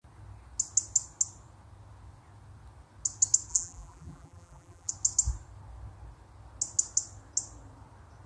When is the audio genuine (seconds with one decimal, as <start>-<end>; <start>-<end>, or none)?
0.0-3.5; 4.9-8.3